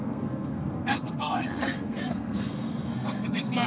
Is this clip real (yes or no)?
no